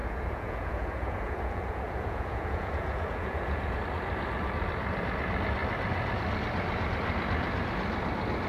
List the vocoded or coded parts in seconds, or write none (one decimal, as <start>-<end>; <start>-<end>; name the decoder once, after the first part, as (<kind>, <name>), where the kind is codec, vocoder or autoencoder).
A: 0.0-3.8 (vocoder, Vocos)